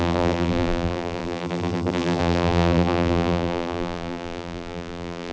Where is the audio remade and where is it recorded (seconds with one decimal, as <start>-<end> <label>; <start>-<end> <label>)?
0.0-5.3 remade